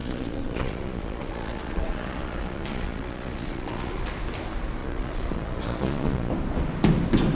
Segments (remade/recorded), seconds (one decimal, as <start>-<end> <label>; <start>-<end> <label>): 0.0-4.1 remade; 4.1-4.8 recorded; 4.8-6.3 remade; 6.3-7.3 recorded